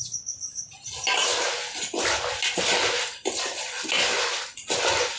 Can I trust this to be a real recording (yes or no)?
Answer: yes